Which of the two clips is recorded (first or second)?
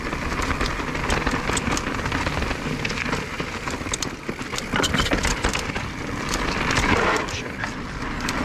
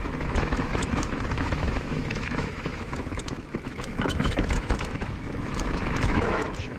first